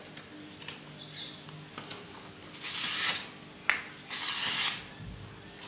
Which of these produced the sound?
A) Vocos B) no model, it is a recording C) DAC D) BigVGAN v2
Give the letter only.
B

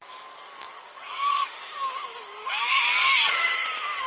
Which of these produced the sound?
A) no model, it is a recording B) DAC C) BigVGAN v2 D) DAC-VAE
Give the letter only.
B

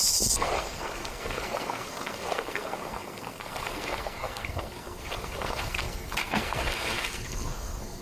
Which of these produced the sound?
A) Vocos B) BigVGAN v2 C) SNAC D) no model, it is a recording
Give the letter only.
C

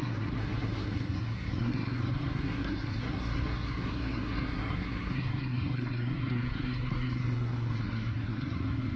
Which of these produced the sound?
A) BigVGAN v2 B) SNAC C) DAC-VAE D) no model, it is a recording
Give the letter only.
B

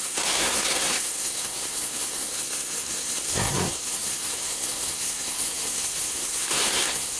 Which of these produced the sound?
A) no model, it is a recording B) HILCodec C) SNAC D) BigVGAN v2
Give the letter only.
C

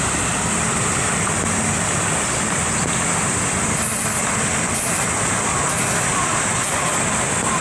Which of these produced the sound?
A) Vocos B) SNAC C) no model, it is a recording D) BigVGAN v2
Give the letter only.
C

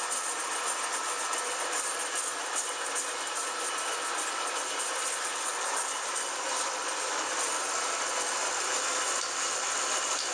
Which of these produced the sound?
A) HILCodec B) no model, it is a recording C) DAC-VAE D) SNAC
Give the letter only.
B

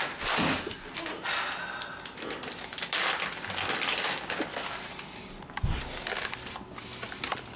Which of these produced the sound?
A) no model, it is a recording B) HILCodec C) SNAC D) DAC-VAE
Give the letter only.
A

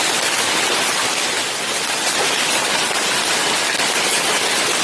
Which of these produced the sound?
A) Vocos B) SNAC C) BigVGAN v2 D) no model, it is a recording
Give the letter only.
D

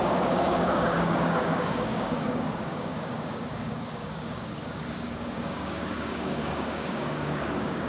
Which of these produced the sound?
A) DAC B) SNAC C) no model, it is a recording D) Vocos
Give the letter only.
A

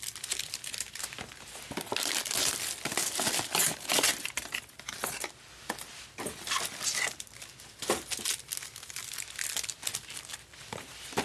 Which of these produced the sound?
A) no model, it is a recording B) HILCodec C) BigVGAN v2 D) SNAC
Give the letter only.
A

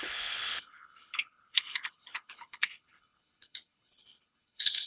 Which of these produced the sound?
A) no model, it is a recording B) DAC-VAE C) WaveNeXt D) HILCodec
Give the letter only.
D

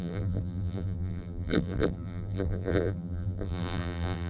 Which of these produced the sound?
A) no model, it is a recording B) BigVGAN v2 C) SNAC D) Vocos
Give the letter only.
B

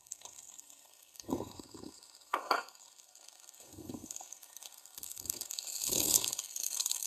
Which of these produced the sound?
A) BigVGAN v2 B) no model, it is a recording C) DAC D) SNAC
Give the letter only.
D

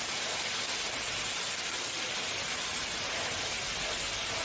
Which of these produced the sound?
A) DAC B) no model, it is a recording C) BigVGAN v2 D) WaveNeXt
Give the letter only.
B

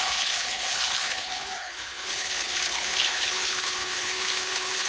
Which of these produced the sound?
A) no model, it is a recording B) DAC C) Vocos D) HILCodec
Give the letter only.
D